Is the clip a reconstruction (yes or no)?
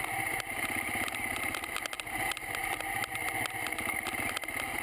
no